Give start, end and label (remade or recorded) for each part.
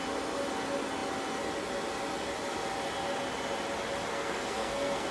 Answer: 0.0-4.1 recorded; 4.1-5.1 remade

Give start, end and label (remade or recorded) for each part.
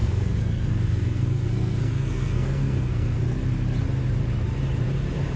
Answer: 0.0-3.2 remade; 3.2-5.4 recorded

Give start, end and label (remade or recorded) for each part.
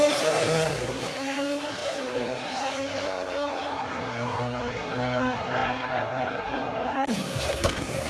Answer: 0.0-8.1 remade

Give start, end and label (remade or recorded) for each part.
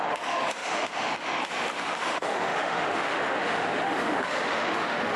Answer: 0.0-5.2 remade